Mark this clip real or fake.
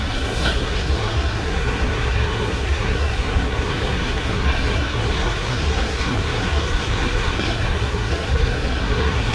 fake